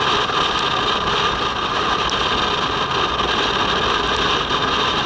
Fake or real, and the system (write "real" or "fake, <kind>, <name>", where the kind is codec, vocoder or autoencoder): real